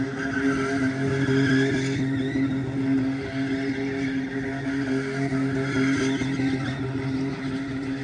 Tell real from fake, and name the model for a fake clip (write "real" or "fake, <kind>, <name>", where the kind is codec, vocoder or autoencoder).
real